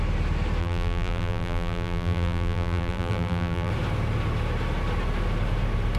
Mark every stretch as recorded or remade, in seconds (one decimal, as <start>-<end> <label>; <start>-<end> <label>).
0.0-0.6 recorded; 0.6-3.7 remade; 3.7-6.0 recorded